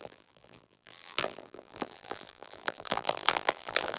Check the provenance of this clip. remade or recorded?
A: remade